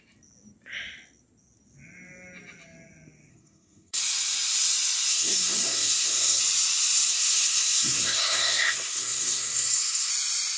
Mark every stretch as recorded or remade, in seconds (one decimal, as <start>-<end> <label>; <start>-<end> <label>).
0.0-3.3 recorded; 3.3-4.0 remade; 4.0-5.1 recorded; 5.1-6.4 remade; 6.4-7.1 recorded; 7.1-10.1 remade; 10.1-10.6 recorded